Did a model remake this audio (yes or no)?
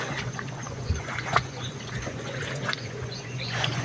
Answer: yes